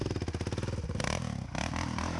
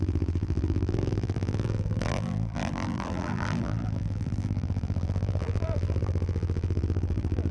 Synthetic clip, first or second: second